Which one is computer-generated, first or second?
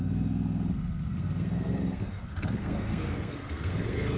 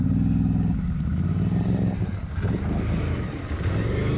first